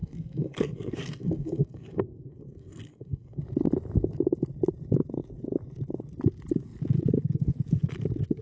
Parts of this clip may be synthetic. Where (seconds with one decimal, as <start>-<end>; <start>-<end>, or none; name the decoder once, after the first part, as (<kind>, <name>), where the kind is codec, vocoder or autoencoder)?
0.0-3.4 (codec, SNAC)